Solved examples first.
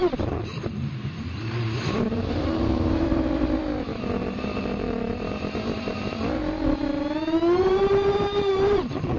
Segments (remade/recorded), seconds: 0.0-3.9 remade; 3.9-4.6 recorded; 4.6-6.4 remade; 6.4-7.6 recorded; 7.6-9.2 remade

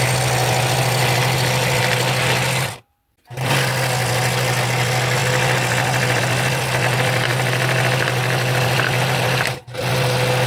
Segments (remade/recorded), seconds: 0.0-10.5 recorded

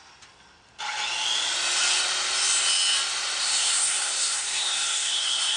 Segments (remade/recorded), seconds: 0.0-3.4 recorded; 3.4-5.6 remade

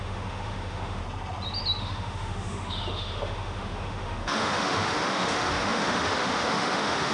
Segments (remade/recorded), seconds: 0.0-1.0 remade; 1.0-1.8 recorded; 1.8-7.1 remade

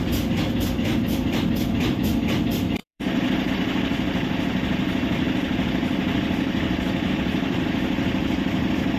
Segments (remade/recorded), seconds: 0.0-2.8 recorded; 2.8-3.5 remade; 3.5-9.0 recorded

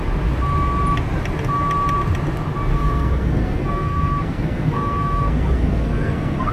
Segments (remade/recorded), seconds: 0.0-2.7 recorded; 2.7-6.5 remade